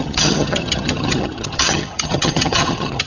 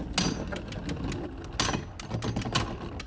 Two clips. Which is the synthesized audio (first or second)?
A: first